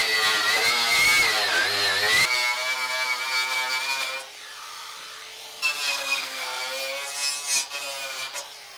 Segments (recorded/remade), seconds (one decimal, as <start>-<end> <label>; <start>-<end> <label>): 0.0-5.9 recorded; 5.9-6.6 remade; 6.6-8.8 recorded